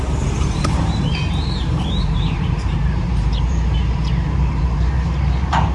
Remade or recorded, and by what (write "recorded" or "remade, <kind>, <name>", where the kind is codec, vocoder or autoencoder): remade, vocoder, BigVGAN v2